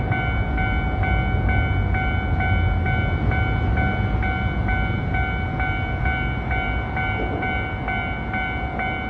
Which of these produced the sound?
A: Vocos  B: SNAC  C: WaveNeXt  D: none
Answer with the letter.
D